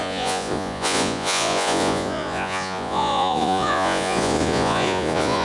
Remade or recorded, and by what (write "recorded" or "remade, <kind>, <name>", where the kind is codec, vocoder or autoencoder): remade, vocoder, Vocos